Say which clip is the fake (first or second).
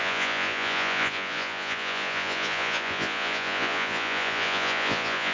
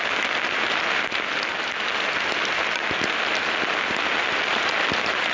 first